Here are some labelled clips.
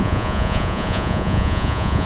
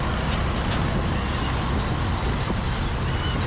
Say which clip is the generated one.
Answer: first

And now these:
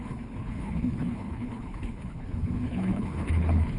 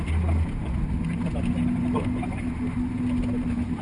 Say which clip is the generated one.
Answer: first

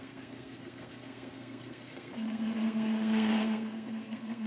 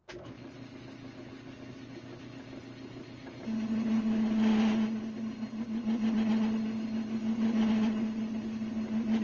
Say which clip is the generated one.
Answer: first